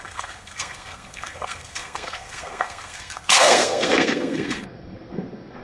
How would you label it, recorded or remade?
remade